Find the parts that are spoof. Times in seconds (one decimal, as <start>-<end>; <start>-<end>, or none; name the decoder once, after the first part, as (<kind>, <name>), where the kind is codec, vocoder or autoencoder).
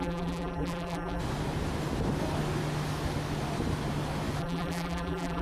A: 0.0-1.2 (vocoder, BigVGAN v2); 4.4-5.4